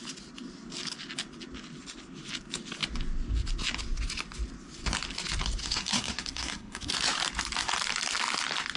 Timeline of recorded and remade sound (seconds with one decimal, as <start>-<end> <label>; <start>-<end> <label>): 0.0-5.6 recorded; 5.6-6.9 remade; 6.9-8.8 recorded